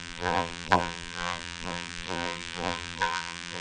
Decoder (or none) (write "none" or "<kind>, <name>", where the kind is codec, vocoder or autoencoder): vocoder, BigVGAN v2